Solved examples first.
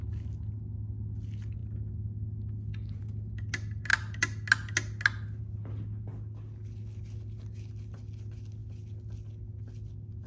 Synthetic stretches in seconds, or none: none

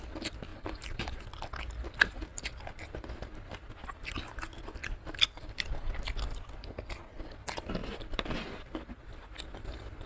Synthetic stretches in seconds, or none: 0.5-1.2 (vocoder, BigVGAN v2); 4.8-5.7

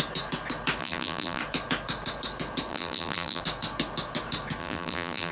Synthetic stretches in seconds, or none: 0.8-1.4 (vocoder, BigVGAN v2); 2.7-3.4; 4.6-5.3

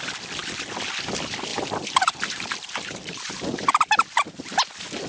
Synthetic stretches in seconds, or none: 1.5-4.2 (vocoder, BigVGAN v2)

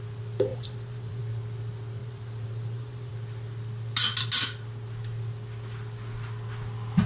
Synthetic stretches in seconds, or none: 0.5-1.2 (vocoder, BigVGAN v2); 2.0-3.1

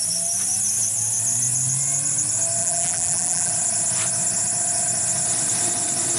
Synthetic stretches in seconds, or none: 2.6-3.5 (vocoder, BigVGAN v2)

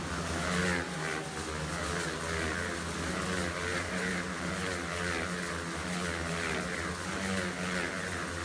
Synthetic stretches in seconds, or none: 3.7-4.5 (vocoder, BigVGAN v2)

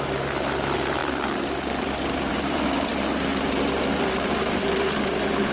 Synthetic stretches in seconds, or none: 0.0-5.5 (vocoder, BigVGAN v2)